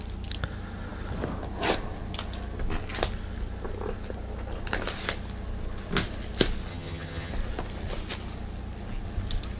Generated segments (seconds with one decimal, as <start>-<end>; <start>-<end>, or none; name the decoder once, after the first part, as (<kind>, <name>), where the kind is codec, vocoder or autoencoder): 6.7-7.3 (vocoder, HiFi-GAN)